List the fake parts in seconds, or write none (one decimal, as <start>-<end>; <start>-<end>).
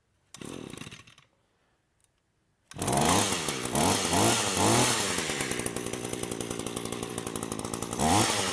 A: none